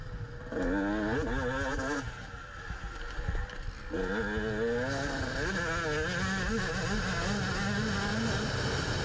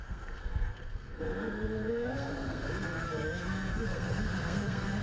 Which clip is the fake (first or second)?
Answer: second